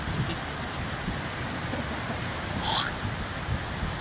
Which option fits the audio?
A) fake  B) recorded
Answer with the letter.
B